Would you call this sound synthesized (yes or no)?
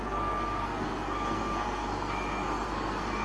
yes